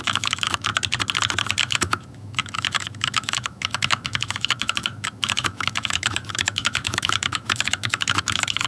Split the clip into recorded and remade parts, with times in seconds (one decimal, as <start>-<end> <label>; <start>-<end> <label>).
0.0-0.7 remade; 0.7-1.6 recorded; 1.6-8.7 remade